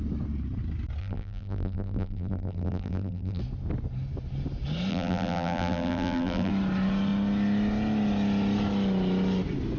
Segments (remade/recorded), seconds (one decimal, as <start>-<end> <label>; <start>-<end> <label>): 0.0-1.0 recorded; 1.0-3.4 remade; 3.4-4.9 recorded; 4.9-6.5 remade; 6.5-9.8 recorded